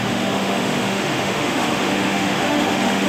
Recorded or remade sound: remade